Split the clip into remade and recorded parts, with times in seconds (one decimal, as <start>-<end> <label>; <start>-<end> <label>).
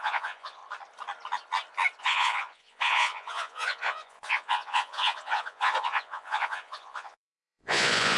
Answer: 0.0-0.6 remade; 0.6-2.0 recorded; 2.0-8.2 remade